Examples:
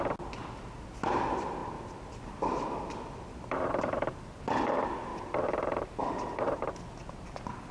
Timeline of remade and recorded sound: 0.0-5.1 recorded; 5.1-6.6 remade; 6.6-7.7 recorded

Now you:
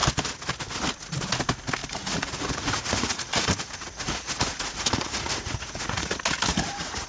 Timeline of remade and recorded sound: 0.0-1.8 recorded; 1.8-6.1 remade; 6.1-6.5 recorded; 6.5-7.1 remade